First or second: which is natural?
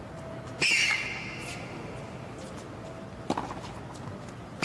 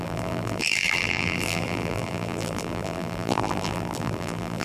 first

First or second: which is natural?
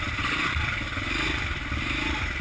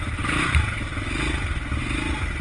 second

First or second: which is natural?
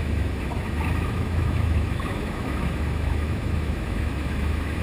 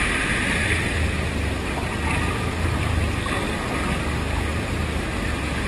second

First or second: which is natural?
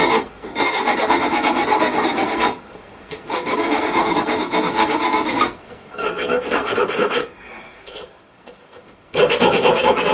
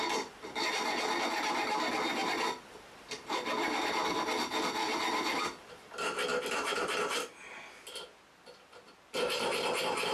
second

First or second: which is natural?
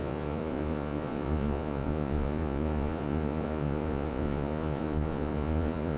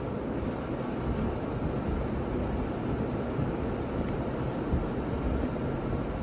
second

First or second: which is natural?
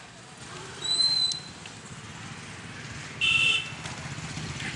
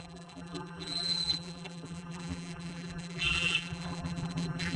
first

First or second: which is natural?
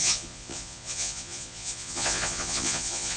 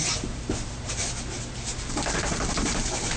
second